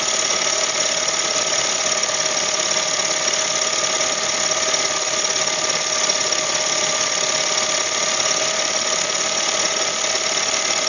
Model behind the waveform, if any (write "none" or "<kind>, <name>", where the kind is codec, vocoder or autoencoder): none